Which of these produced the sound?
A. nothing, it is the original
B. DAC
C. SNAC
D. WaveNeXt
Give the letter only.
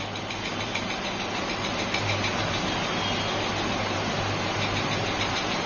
A